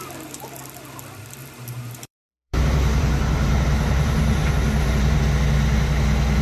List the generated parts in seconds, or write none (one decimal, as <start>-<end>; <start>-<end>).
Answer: 1.4-5.2